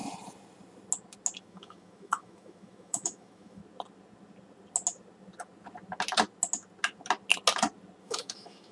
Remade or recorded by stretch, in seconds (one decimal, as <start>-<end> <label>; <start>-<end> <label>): 0.0-1.4 recorded; 1.4-3.6 remade; 3.6-8.0 recorded; 8.0-8.7 remade